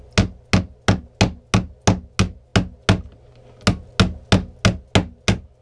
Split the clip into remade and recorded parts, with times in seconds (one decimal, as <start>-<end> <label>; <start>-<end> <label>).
0.0-5.6 recorded